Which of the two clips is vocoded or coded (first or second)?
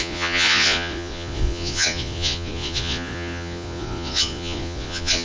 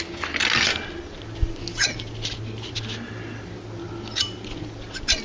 first